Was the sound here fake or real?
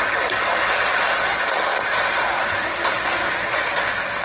real